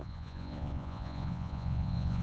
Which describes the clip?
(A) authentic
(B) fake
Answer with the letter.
B